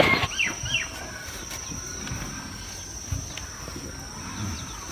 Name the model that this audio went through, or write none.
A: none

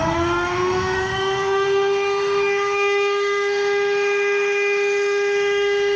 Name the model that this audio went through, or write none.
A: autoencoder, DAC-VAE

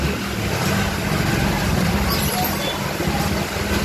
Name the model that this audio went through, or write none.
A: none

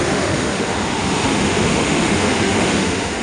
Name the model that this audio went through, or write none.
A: autoencoder, DAC-VAE